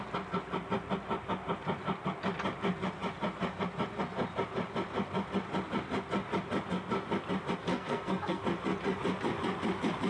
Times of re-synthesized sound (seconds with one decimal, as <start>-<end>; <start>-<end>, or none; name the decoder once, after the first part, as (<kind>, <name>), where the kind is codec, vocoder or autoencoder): 7.7-8.4 (codec, SNAC)